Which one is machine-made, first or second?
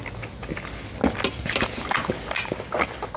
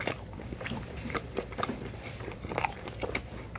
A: second